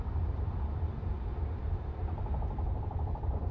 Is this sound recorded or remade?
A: remade